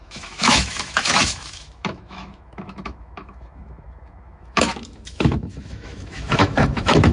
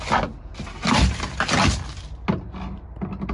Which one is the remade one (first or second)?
first